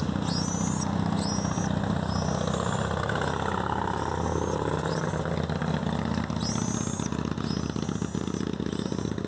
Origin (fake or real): real